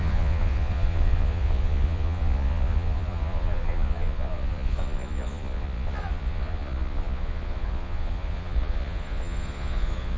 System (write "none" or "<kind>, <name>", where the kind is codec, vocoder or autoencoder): vocoder, Vocos